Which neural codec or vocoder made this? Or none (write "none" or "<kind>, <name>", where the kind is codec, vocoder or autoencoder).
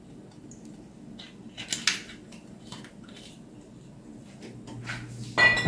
none